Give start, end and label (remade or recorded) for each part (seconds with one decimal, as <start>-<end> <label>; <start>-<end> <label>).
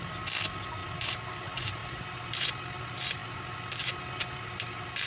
0.0-0.8 recorded; 0.8-1.4 remade; 1.4-1.8 recorded; 1.8-2.5 remade; 2.5-5.1 recorded